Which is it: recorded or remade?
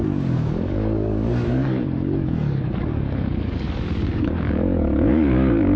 remade